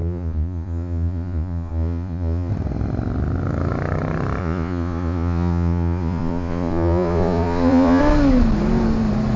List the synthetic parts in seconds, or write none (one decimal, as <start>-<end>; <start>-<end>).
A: 0.0-2.5; 4.4-8.0